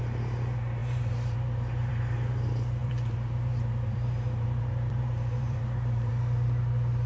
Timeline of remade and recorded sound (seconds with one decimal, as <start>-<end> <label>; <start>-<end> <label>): 0.0-6.1 remade; 6.1-7.1 recorded